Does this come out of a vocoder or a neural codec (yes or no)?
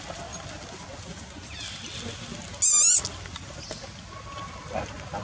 no